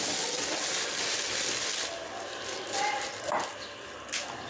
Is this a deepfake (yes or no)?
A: no